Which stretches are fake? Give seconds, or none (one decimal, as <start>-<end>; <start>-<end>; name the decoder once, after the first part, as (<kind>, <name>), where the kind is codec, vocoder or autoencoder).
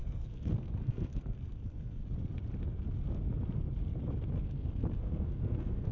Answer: 0.0-2.0 (codec, SNAC); 4.4-5.9